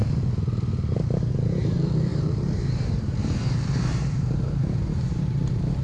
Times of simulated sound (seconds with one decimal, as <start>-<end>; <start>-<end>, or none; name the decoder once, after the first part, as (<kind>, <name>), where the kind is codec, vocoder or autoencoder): 0.9-5.8 (vocoder, BigVGAN v2)